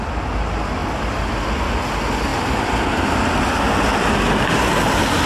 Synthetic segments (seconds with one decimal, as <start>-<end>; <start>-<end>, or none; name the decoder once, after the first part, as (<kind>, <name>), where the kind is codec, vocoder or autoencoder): none